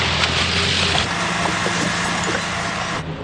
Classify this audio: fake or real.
real